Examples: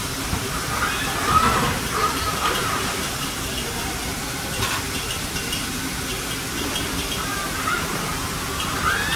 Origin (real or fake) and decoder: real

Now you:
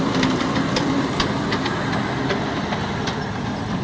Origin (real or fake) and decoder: real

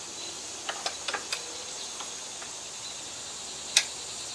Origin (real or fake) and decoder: real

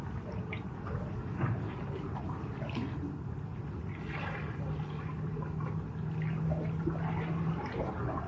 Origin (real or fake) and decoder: real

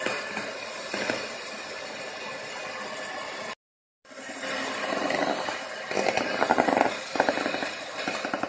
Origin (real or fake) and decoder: real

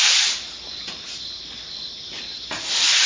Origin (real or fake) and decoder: real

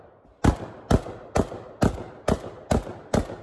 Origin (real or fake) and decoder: real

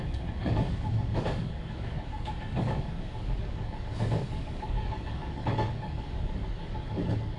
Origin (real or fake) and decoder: fake, codec, DAC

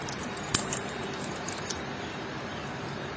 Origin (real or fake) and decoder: fake, vocoder, BigVGAN v2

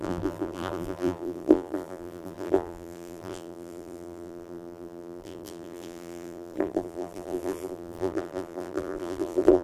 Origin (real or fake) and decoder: fake, vocoder, BigVGAN v2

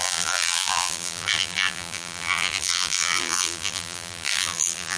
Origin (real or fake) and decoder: fake, vocoder, BigVGAN v2